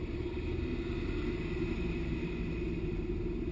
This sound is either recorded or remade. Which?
recorded